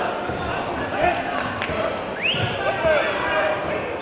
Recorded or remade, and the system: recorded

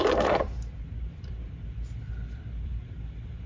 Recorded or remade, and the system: remade, vocoder, BigVGAN v2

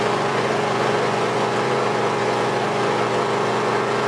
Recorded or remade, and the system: remade, vocoder, Vocos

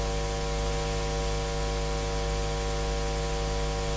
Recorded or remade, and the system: recorded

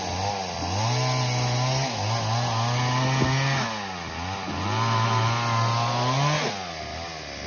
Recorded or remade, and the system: recorded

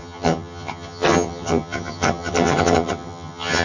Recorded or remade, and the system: remade, vocoder, HiFi-GAN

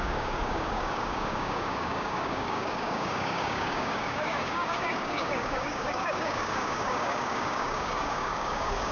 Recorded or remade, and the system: remade, codec, DAC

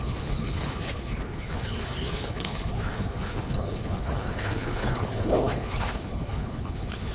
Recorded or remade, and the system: remade, codec, HILCodec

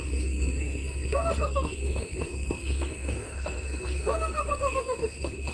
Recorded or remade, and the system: remade, codec, SNAC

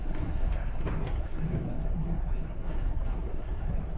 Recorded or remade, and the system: remade, codec, SNAC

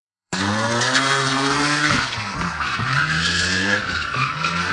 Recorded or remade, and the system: remade, codec, SNAC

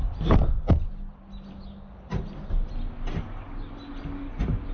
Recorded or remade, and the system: recorded